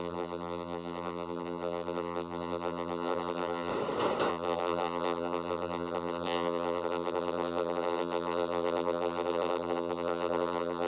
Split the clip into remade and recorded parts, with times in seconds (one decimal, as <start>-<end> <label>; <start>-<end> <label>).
0.0-3.7 remade; 3.7-4.3 recorded; 4.3-10.9 remade